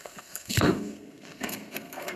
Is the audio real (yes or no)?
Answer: no